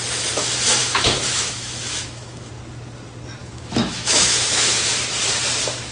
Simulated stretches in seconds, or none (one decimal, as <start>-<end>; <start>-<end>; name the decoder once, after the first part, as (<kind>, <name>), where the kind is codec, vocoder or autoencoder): 0.8-2.5 (autoencoder, DAC-VAE); 3.4-4.9